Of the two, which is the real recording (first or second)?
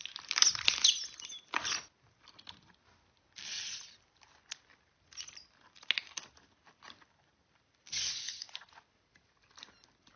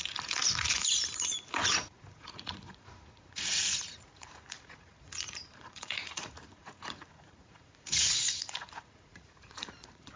first